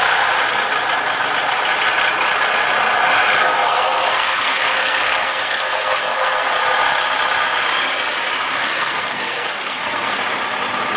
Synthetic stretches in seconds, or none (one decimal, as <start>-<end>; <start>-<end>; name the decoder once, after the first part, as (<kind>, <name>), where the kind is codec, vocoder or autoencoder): 3.4-6.5 (codec, SNAC); 8.6-10.2